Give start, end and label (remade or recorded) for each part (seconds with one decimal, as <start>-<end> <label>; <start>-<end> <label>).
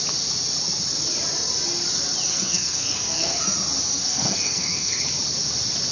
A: 0.0-2.3 recorded; 2.3-3.4 remade; 3.4-4.0 recorded; 4.0-5.0 remade; 5.0-5.9 recorded